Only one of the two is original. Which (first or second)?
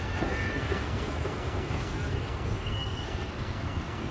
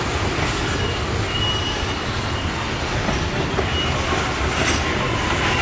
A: second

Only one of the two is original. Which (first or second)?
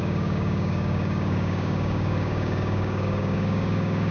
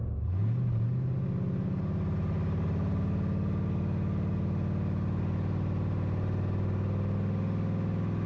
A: second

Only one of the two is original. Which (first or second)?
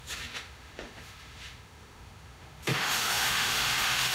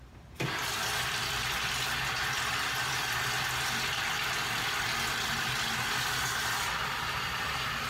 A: second